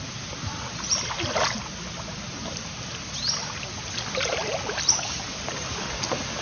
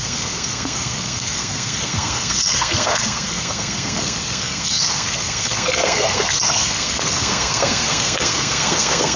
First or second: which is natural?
first